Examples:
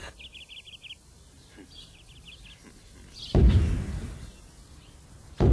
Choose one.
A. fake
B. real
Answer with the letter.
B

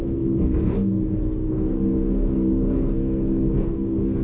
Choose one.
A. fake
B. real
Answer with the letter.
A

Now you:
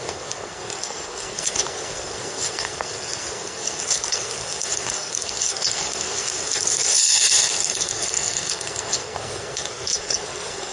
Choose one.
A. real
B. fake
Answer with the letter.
B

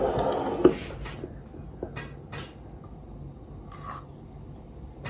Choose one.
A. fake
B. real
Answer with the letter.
B